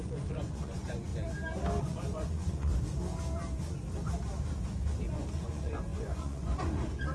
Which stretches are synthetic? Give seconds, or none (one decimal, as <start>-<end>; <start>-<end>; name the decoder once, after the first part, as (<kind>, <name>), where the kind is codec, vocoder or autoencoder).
0.0-1.1 (vocoder, Vocos); 1.8-2.7; 5.1-7.1